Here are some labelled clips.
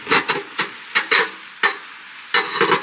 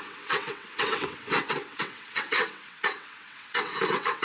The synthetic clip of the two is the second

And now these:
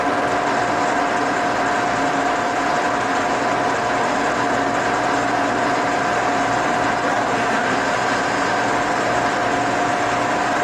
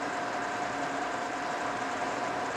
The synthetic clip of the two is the second